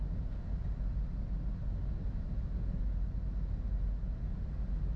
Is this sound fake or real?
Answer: real